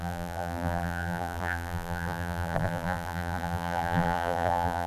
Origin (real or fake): fake